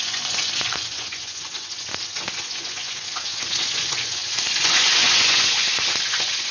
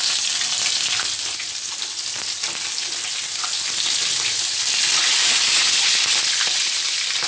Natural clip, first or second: second